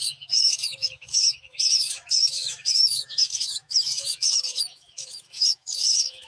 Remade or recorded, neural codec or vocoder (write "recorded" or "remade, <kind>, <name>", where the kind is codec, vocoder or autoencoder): remade, autoencoder, DAC-VAE